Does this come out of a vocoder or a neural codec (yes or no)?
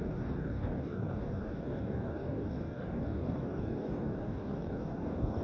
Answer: yes